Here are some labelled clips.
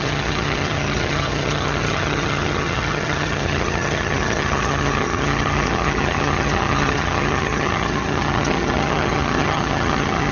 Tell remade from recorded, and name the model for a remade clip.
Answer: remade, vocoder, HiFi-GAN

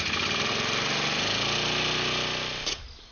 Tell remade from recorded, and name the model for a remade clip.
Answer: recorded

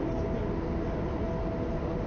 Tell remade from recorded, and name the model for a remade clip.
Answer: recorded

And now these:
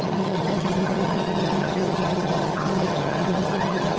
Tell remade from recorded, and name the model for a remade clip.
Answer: remade, vocoder, HiFi-GAN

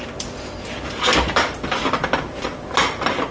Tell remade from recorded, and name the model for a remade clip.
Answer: recorded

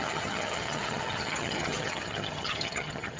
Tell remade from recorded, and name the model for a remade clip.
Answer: remade, vocoder, HiFi-GAN